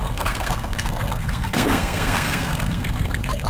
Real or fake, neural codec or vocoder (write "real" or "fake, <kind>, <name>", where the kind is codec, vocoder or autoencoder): fake, codec, SNAC